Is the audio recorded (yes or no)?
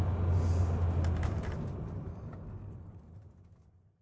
yes